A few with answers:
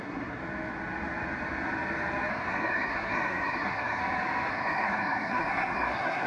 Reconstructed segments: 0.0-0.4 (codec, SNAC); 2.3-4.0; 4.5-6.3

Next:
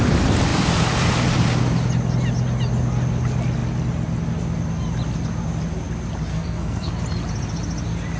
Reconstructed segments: 6.3-6.9 (codec, SNAC)

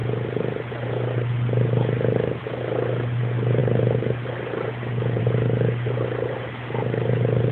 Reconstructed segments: none

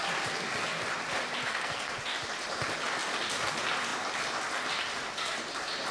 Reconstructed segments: 1.4-2.0 (codec, SNAC)

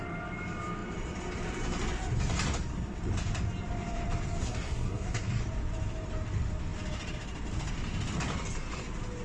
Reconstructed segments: 4.4-5.4 (codec, SNAC)